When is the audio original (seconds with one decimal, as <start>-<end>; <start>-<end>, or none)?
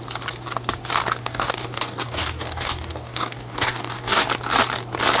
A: 0.0-1.2; 4.3-5.2